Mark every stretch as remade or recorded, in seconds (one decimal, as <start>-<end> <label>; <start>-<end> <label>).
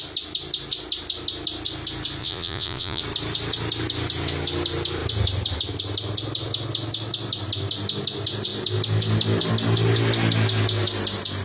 0.0-2.2 recorded; 2.2-3.0 remade; 3.0-11.4 recorded